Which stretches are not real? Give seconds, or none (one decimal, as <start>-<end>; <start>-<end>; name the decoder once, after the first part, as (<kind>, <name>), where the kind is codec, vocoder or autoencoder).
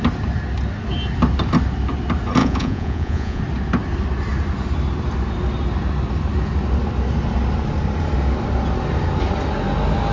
2.4-3.4 (vocoder, Vocos)